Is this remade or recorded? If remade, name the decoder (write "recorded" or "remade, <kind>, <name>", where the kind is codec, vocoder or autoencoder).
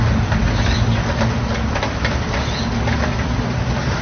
recorded